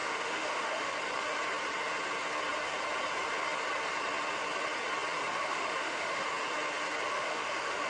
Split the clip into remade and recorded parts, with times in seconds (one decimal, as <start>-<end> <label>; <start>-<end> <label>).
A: 0.0-0.9 remade; 0.9-5.3 recorded; 5.3-6.2 remade; 6.2-7.1 recorded; 7.1-7.9 remade